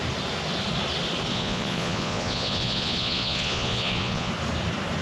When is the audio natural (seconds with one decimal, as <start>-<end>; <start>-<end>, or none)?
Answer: 0.0-1.3; 4.3-5.0